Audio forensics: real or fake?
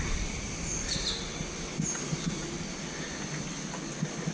real